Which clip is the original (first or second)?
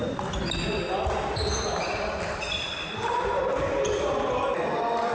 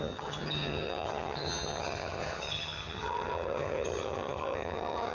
first